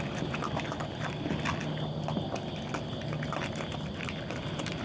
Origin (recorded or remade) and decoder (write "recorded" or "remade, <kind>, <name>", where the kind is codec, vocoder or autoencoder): recorded